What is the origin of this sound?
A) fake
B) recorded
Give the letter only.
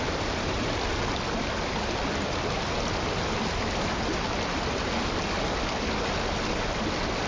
B